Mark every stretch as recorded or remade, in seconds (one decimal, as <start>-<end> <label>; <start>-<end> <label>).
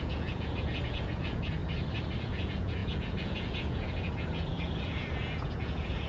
0.0-1.6 remade; 1.6-2.2 recorded; 2.2-6.1 remade